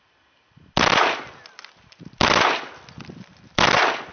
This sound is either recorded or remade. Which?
recorded